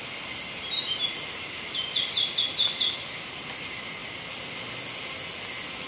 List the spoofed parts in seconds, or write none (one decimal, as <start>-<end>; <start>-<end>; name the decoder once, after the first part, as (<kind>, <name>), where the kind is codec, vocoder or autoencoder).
none